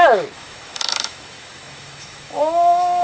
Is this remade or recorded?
remade